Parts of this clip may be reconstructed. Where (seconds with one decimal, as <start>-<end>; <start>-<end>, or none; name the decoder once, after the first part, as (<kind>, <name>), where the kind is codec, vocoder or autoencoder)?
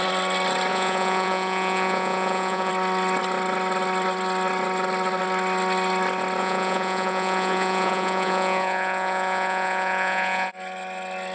0.7-2.7 (vocoder, Vocos); 6.4-10.5